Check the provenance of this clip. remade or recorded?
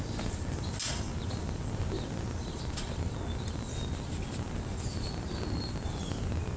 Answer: recorded